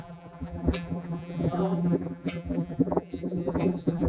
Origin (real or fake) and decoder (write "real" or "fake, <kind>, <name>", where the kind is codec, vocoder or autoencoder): fake, vocoder, BigVGAN v2